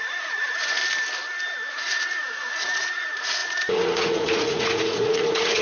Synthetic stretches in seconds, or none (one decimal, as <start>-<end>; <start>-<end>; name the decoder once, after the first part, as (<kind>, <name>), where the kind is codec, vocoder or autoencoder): 0.0-0.8 (vocoder, Vocos); 1.7-5.6